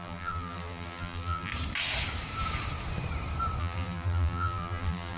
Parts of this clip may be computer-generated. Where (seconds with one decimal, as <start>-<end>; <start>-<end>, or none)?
0.0-1.5; 3.6-5.2